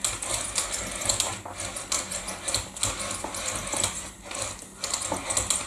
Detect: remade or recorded recorded